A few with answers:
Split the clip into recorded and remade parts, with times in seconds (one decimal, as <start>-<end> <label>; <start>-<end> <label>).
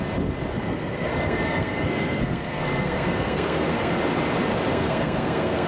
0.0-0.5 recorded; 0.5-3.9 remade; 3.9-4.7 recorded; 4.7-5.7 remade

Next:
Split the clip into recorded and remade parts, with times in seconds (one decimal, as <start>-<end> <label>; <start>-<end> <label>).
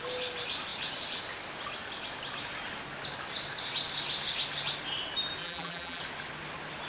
0.0-5.4 recorded; 5.4-6.0 remade; 6.0-6.9 recorded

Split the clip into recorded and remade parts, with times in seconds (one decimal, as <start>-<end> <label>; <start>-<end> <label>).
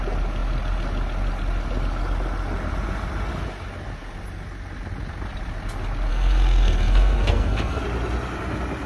0.0-6.1 recorded; 6.1-7.8 remade; 7.8-8.9 recorded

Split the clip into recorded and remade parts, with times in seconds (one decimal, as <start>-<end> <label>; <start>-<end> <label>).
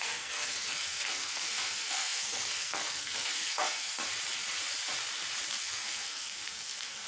0.0-4.0 remade; 4.0-5.6 recorded; 5.6-7.1 remade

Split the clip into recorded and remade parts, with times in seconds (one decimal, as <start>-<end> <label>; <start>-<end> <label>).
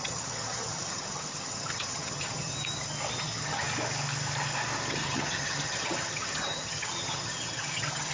0.0-2.5 remade; 2.5-3.2 recorded; 3.2-3.6 remade; 3.6-4.9 recorded; 4.9-8.1 remade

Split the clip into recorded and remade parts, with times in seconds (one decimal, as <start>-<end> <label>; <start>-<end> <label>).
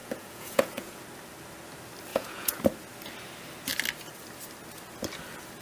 0.0-1.0 remade; 1.0-2.1 recorded; 2.1-2.6 remade; 2.6-5.6 recorded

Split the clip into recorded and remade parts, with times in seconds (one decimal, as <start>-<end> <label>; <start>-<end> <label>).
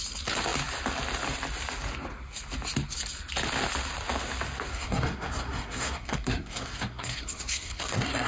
0.0-4.7 recorded; 4.7-8.3 remade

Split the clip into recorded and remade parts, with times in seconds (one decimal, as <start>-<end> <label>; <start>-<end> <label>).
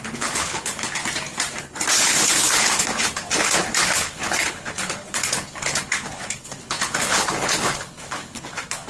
0.0-1.0 remade; 1.0-1.6 recorded; 1.6-8.9 remade